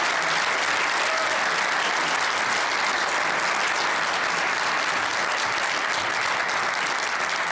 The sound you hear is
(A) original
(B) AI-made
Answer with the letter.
A